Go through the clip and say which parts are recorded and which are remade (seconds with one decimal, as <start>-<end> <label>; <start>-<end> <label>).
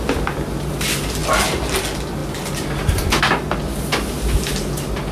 0.0-5.1 recorded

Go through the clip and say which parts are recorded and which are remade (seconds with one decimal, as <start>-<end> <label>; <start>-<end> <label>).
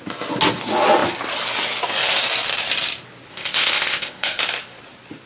0.0-3.3 recorded; 3.3-4.4 remade; 4.4-5.3 recorded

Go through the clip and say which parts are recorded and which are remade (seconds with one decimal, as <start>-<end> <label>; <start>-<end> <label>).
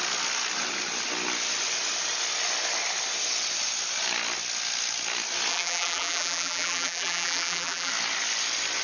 0.0-5.5 recorded; 5.5-7.9 remade; 7.9-8.8 recorded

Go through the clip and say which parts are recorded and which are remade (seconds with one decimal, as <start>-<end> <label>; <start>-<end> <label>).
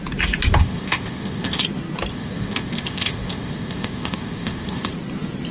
0.0-0.6 recorded; 0.6-1.6 remade; 1.6-2.1 recorded; 2.1-4.9 remade; 4.9-5.5 recorded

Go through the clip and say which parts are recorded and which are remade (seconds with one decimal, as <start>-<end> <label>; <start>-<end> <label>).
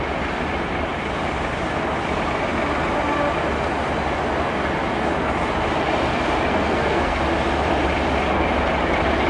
0.0-6.5 recorded; 6.5-7.2 remade; 7.2-9.3 recorded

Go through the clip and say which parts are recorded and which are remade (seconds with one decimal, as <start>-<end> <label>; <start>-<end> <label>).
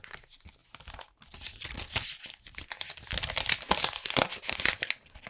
0.0-0.6 remade; 0.6-3.8 recorded; 3.8-5.3 remade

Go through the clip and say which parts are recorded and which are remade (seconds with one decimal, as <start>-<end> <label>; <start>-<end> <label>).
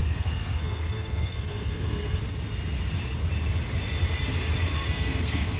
0.0-2.2 remade; 2.2-4.9 recorded; 4.9-5.6 remade